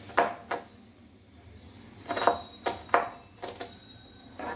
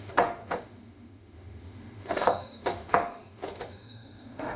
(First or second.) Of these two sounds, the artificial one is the second